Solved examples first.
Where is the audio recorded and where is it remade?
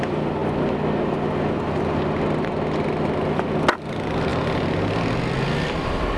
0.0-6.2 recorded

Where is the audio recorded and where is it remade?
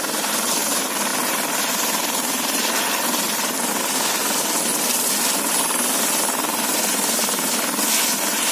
0.0-8.5 recorded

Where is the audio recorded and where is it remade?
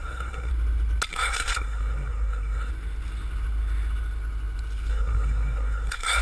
0.0-0.5 remade; 0.5-1.1 recorded; 1.1-2.7 remade; 2.7-4.9 recorded; 4.9-6.2 remade